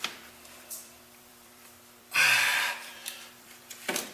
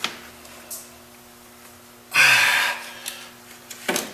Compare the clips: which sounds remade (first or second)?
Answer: first